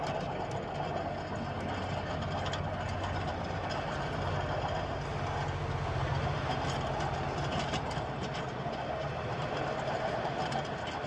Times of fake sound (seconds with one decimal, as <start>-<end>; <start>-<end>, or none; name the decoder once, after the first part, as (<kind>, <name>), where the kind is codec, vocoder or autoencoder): none